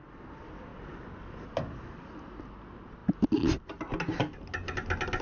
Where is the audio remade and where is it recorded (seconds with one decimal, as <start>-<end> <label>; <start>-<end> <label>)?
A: 0.0-5.2 recorded